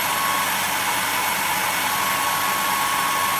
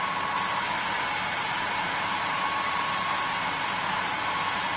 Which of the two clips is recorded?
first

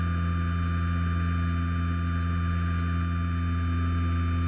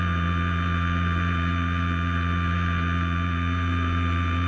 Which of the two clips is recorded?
first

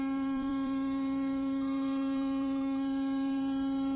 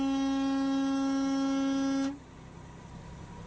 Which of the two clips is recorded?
second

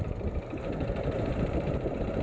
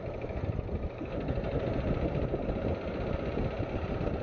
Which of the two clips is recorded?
second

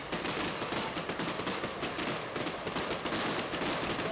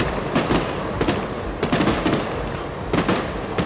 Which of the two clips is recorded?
first